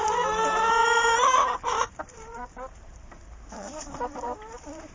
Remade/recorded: remade